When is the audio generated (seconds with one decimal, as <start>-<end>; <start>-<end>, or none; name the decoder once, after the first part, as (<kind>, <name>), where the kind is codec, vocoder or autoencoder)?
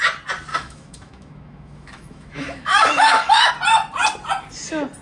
0.5-3.5 (autoencoder, DAC-VAE)